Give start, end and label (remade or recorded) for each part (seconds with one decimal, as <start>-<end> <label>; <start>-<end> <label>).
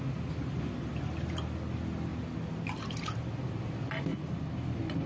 0.0-5.1 recorded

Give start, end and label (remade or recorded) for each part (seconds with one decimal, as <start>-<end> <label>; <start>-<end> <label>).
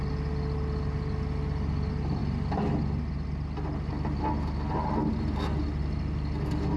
0.0-6.8 recorded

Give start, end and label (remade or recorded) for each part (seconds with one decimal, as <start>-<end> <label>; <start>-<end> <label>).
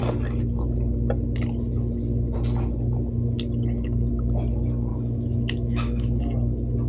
0.0-4.9 recorded; 4.9-6.2 remade; 6.2-6.9 recorded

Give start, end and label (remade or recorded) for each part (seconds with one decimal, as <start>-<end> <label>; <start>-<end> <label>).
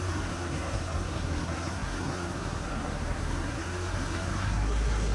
0.0-5.1 remade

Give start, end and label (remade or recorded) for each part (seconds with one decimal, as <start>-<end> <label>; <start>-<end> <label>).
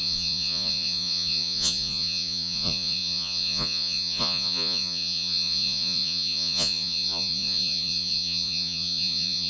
0.0-9.5 remade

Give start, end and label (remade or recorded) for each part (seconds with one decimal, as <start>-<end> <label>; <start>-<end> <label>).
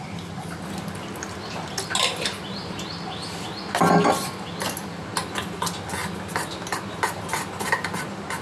0.0-8.4 recorded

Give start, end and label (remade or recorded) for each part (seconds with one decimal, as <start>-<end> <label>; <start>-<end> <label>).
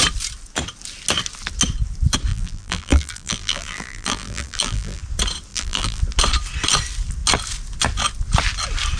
0.0-2.3 recorded; 2.3-5.0 remade; 5.0-5.5 recorded; 5.5-6.0 remade; 6.0-9.0 recorded